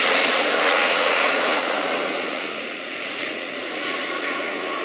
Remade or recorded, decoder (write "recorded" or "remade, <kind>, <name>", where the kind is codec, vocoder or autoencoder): remade, vocoder, Vocos